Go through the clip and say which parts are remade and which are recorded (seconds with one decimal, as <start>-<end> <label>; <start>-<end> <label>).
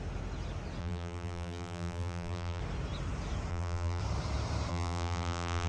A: 0.0-0.8 recorded; 0.8-2.6 remade; 2.6-3.5 recorded; 3.5-4.0 remade; 4.0-4.7 recorded; 4.7-5.7 remade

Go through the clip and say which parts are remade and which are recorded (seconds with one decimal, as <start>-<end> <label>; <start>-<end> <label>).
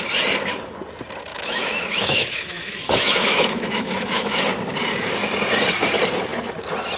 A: 0.0-1.3 recorded; 1.3-4.4 remade; 4.4-7.0 recorded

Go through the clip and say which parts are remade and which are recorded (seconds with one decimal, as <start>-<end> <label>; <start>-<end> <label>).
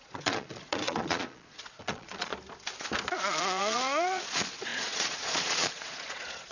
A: 0.0-2.3 remade; 2.3-3.2 recorded; 3.2-6.5 remade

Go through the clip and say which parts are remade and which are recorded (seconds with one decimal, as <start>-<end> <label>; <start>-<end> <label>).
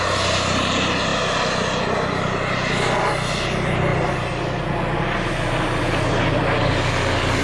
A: 0.0-7.4 recorded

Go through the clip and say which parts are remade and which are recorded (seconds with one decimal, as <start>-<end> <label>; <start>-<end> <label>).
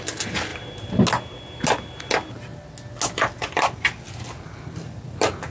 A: 0.0-5.5 recorded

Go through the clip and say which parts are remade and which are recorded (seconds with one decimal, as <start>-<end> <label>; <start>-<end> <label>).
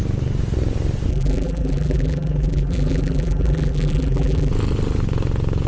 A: 0.0-1.1 recorded; 1.1-4.5 remade; 4.5-5.7 recorded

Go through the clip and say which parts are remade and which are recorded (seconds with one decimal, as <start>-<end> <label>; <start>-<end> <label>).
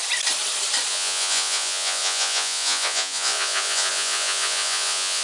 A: 0.0-0.9 recorded; 0.9-5.2 remade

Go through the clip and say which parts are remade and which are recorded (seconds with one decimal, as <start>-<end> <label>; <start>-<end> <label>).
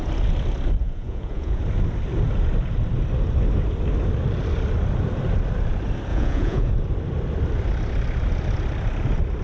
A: 0.0-0.8 recorded; 0.8-1.6 remade; 1.6-6.1 recorded; 6.1-6.7 remade; 6.7-9.4 recorded